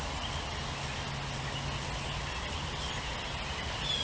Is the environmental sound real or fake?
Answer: real